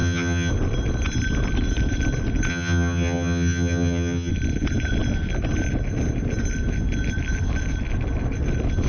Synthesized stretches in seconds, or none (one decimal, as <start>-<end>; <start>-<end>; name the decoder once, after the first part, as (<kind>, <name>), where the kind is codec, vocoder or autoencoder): 0.0-0.5 (vocoder, HiFi-GAN); 2.5-4.3